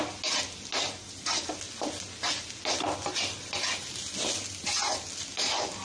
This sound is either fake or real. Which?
real